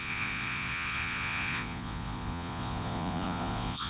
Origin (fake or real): fake